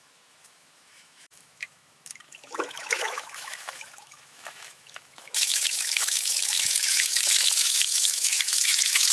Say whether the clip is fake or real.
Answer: fake